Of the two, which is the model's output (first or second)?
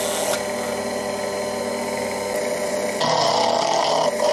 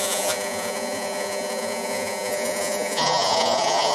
second